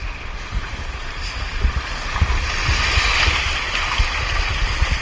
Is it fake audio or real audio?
real